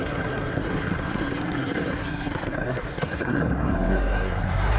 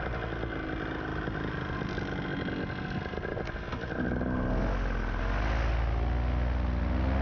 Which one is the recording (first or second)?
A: second